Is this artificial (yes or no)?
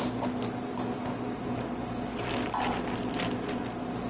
no